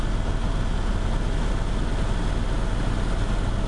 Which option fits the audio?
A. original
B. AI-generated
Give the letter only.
A